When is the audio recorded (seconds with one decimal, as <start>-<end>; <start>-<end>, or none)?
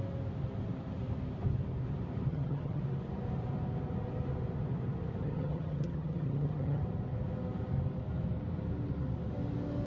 0.0-2.3; 2.8-5.2; 6.8-9.9